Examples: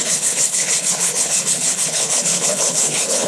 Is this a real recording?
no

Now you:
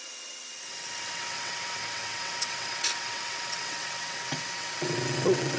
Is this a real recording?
no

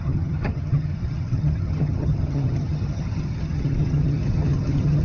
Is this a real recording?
no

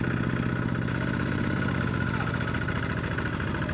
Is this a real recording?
yes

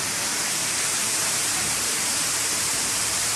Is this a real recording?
no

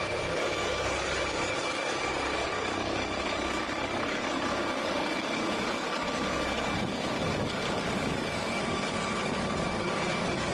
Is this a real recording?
no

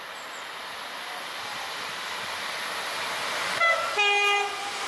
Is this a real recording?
yes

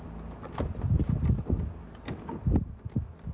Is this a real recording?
yes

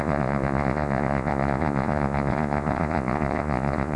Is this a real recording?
no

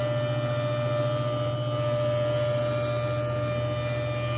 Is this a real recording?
yes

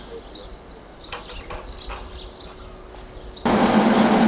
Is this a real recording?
yes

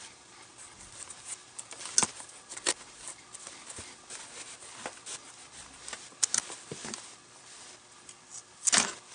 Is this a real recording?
yes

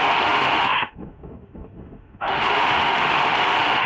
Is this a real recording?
no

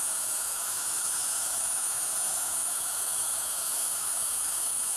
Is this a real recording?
no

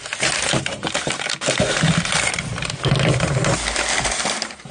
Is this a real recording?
yes